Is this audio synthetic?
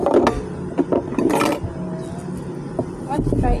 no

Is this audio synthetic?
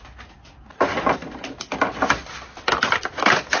no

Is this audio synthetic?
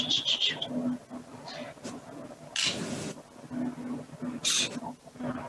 no